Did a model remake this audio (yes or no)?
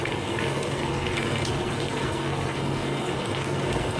yes